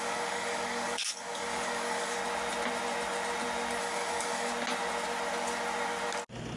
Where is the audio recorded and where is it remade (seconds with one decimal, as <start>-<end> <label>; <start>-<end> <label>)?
0.0-2.2 remade; 2.2-3.8 recorded; 3.8-4.5 remade; 4.5-6.6 recorded